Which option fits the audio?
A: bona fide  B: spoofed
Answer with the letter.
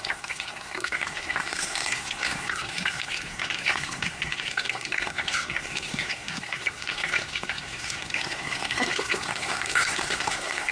B